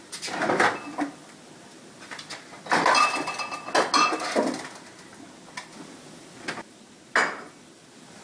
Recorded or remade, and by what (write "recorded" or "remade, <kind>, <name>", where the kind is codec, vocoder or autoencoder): recorded